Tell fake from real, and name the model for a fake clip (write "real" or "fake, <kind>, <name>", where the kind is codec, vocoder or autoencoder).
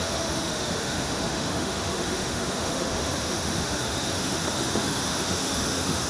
fake, autoencoder, DAC-VAE